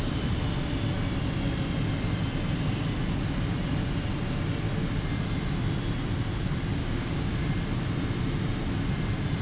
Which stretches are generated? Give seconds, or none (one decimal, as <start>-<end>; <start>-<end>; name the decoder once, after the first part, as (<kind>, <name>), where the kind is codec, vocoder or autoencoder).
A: 6.8-7.5 (codec, DAC)